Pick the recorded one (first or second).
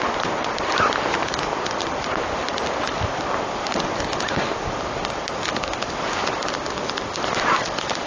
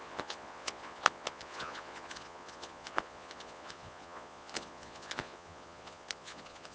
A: first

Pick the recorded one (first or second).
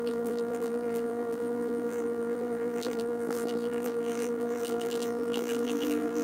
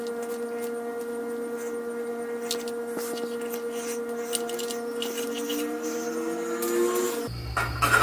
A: second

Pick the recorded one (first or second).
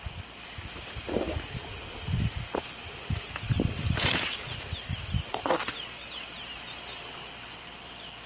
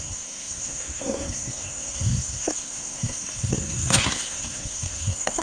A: first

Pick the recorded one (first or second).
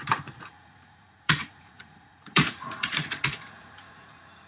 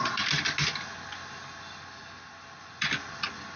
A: second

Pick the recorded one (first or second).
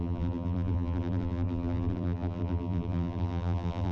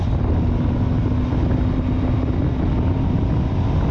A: second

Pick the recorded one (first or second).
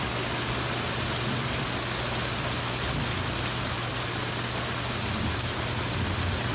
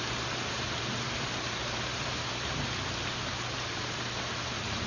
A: first